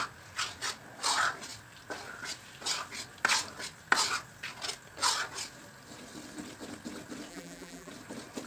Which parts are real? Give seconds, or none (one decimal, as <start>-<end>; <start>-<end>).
0.0-7.3; 7.9-8.5